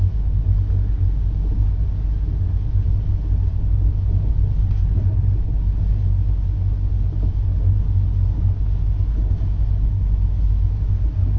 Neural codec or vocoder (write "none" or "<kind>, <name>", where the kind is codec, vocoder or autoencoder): none